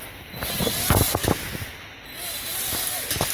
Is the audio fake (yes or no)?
no